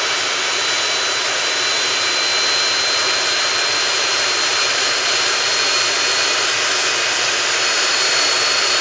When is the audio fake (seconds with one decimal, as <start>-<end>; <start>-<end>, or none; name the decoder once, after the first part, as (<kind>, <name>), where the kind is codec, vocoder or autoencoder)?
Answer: 4.5-5.5 (vocoder, BigVGAN v2); 7.9-8.8